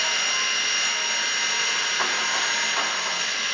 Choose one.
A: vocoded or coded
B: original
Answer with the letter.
B